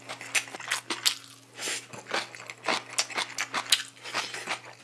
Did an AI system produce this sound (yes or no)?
no